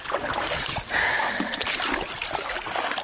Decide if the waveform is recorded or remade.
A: recorded